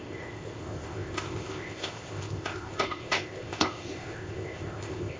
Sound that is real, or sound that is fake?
fake